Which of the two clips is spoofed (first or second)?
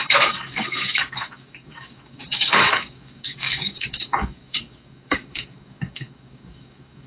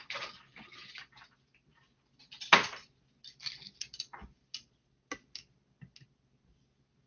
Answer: first